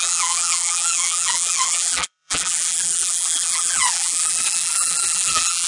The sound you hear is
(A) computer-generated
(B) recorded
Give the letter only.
A